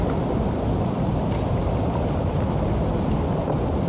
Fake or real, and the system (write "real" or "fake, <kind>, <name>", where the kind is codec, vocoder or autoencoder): real